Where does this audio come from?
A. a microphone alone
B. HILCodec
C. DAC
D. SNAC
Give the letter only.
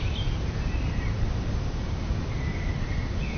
A